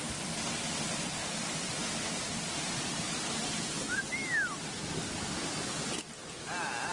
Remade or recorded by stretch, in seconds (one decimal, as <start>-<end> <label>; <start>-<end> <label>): 0.0-1.2 recorded; 1.2-3.5 remade; 3.5-6.9 recorded